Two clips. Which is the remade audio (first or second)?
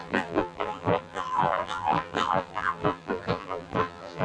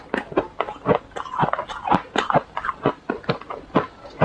first